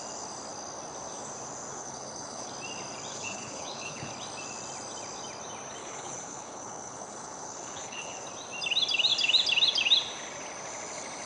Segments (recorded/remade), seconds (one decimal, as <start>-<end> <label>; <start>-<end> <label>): 0.0-1.7 recorded; 1.7-2.5 remade; 2.5-3.1 recorded; 3.1-4.1 remade; 4.1-5.8 recorded; 5.8-8.2 remade; 8.2-11.3 recorded